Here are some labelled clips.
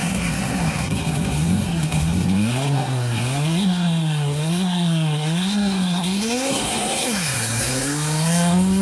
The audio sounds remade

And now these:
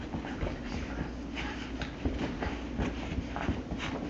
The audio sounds recorded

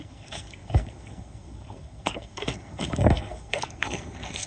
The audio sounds remade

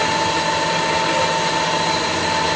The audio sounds recorded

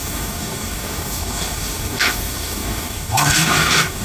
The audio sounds remade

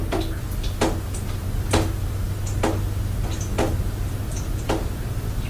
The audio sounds recorded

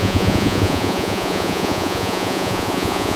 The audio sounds remade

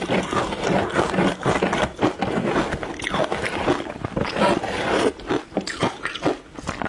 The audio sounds recorded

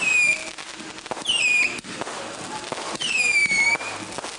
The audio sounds recorded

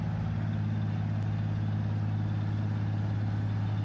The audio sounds recorded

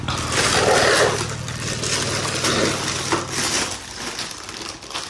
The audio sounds recorded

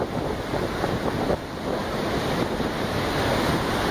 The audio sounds recorded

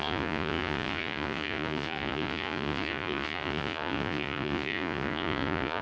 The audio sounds remade